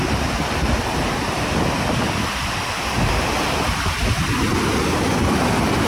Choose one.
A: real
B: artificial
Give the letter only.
A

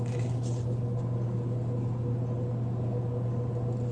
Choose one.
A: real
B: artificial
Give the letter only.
A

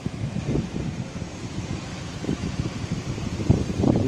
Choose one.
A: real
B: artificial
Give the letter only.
B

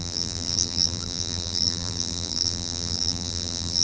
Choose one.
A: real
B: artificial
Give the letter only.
B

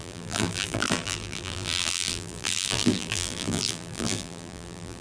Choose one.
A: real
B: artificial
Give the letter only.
B